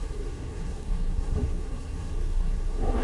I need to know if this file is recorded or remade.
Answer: remade